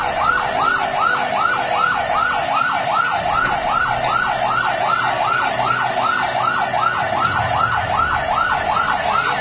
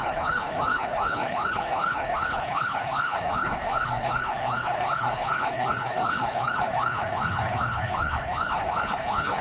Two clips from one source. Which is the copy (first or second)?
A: second